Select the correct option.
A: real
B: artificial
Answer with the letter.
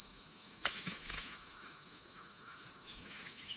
B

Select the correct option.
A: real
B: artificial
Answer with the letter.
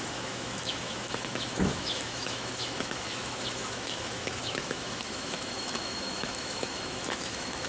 B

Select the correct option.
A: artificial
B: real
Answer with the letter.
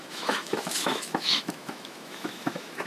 A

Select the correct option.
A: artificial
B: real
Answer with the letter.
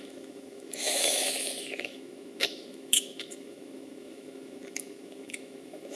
A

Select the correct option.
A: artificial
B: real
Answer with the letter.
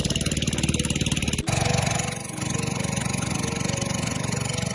B